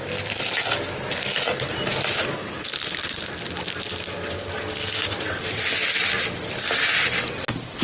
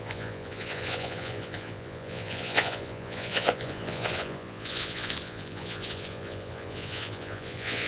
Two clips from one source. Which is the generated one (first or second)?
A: second